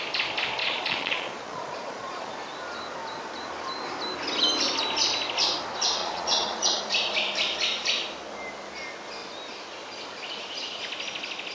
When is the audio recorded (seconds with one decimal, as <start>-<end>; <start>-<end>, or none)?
0.0-0.6; 2.3-6.0; 6.8-11.5